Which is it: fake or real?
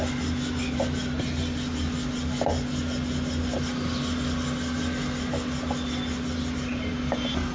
real